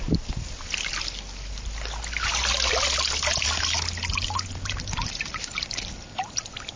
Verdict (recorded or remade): remade